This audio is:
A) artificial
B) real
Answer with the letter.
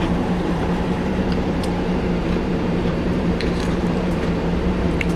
A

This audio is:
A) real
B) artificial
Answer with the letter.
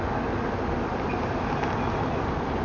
A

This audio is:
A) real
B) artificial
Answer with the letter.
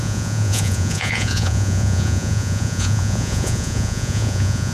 B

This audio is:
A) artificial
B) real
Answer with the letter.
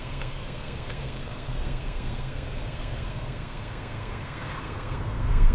A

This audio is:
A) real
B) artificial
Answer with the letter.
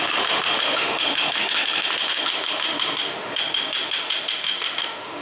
B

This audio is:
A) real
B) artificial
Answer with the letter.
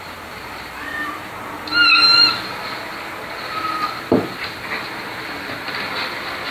A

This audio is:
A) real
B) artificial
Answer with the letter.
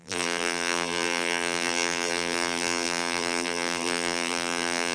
B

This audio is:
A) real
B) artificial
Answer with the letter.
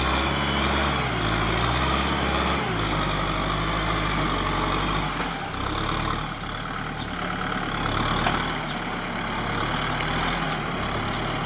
A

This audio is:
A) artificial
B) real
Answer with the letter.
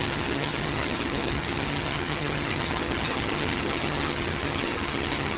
A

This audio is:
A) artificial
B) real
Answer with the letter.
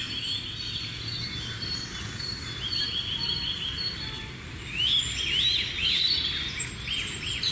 B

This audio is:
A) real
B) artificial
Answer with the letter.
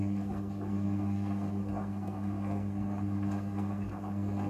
B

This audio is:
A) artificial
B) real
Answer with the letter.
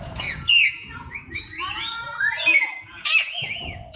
A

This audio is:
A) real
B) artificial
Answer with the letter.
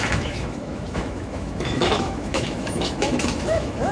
B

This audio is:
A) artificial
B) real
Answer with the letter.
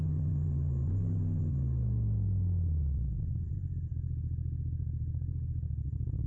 B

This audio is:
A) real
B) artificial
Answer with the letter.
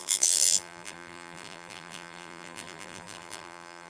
B